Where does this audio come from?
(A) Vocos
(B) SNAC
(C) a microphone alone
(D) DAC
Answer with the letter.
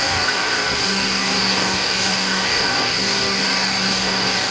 D